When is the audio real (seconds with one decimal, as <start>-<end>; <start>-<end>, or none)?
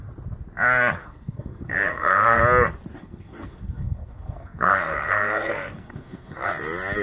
0.0-1.0; 2.4-3.0; 6.5-7.0